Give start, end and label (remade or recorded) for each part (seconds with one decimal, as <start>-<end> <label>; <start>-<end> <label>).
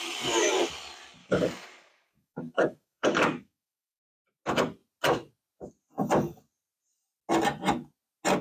0.0-1.2 recorded; 1.2-4.2 remade; 4.2-8.4 recorded